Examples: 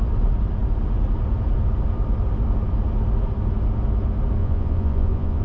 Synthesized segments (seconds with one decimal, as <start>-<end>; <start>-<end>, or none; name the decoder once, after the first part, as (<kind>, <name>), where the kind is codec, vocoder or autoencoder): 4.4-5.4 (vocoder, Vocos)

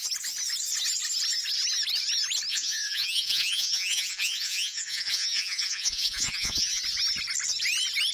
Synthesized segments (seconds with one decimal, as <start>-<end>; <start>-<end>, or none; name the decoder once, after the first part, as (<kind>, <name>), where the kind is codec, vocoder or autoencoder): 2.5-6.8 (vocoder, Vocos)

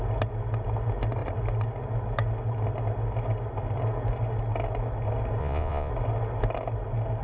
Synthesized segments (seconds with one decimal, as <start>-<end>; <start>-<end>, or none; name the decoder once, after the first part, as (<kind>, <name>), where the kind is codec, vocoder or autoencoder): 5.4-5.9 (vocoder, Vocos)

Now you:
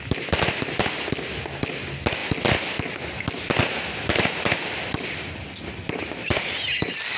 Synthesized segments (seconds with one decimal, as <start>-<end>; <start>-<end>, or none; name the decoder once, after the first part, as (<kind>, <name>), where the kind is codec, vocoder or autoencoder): none

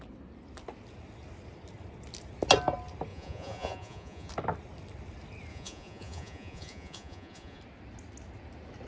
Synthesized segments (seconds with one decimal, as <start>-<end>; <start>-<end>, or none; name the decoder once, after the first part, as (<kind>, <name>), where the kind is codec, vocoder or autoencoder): 3.1-4.3 (vocoder, Vocos); 5.5-7.6

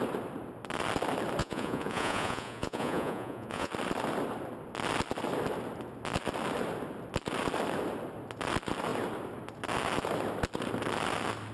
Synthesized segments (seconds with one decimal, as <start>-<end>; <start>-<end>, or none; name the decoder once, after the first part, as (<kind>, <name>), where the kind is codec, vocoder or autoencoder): 1.4-3.7 (vocoder, Vocos)